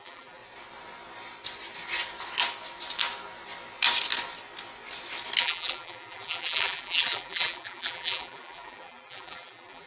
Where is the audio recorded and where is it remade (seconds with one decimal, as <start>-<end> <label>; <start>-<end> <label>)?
0.0-0.4 remade; 0.4-5.4 recorded; 5.4-9.9 remade